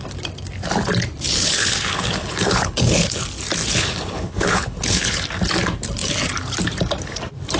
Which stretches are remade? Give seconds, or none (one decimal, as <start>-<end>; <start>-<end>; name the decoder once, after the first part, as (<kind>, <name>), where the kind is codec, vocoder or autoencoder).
1.3-3.2 (codec, HILCodec); 3.6-5.2